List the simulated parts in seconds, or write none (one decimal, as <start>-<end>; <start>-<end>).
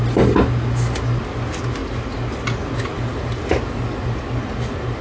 none